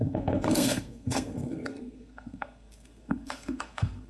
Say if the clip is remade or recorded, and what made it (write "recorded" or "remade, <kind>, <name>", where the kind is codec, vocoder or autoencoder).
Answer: remade, codec, SNAC